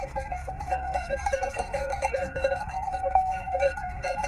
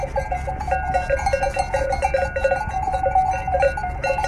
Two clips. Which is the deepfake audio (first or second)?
first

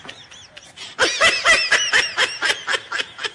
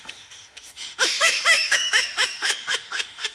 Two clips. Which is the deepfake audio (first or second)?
second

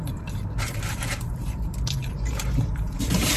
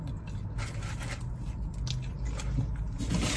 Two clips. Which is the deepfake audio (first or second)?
first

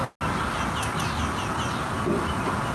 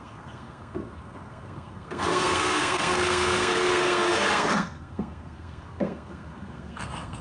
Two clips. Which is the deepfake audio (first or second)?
second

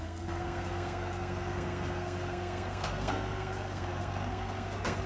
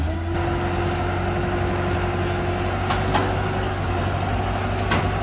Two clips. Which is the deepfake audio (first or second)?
first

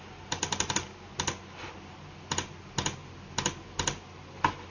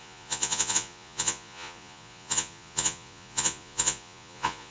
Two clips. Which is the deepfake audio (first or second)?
second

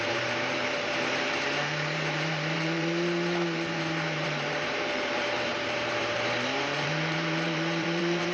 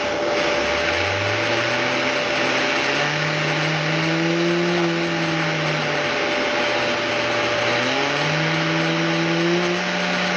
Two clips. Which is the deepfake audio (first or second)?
first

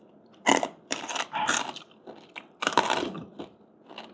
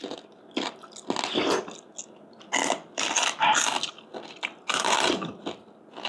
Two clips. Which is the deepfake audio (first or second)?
first